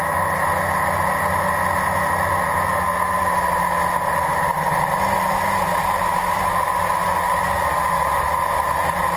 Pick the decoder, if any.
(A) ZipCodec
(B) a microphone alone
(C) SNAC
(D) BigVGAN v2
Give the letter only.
B